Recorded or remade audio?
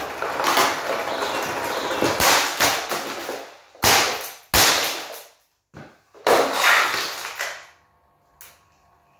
recorded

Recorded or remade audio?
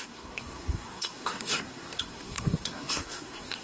remade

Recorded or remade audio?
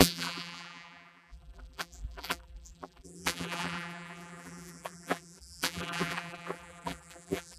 remade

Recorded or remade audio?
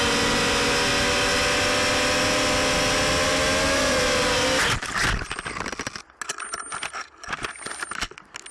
recorded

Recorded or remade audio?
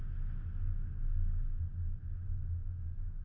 recorded